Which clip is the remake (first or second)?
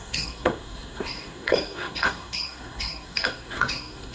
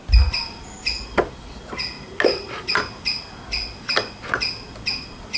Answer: first